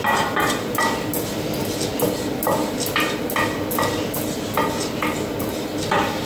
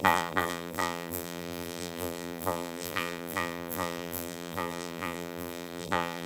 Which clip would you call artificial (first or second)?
second